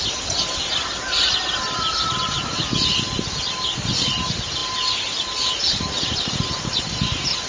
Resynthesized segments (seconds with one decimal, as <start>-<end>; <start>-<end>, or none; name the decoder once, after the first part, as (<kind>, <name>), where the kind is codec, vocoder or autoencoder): none